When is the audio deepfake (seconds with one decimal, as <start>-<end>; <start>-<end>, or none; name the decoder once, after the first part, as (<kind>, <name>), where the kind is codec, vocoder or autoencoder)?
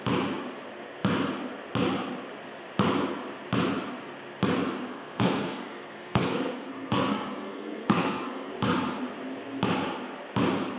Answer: 4.9-8.5 (codec, SNAC)